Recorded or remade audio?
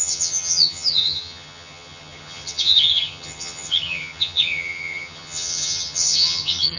remade